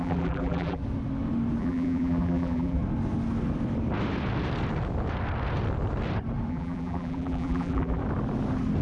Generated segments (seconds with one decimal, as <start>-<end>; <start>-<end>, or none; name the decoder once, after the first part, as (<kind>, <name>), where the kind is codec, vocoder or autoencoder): 0.0-0.8 (vocoder, BigVGAN v2); 1.6-2.8; 6.5-8.0